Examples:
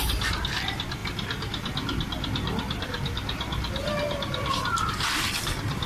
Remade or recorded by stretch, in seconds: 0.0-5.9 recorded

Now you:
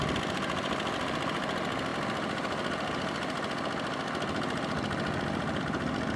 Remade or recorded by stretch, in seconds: 0.0-6.2 recorded

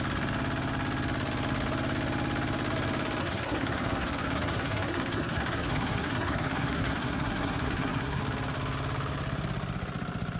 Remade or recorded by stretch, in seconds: 0.0-3.2 recorded; 3.2-8.2 remade; 8.2-10.4 recorded

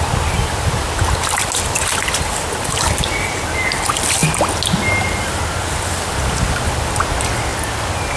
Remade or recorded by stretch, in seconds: 0.0-8.2 recorded

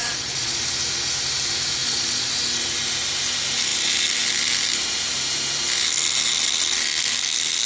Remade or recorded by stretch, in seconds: 0.0-0.6 remade; 0.6-1.8 recorded; 1.8-2.3 remade; 2.3-7.7 recorded

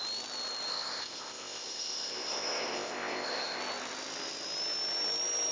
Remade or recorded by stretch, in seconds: 0.0-0.7 recorded; 0.7-3.6 remade; 3.6-5.5 recorded

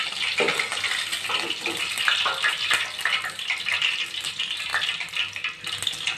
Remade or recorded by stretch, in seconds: 0.0-6.2 recorded